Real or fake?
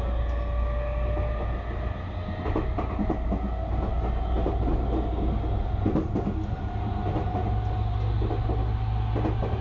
real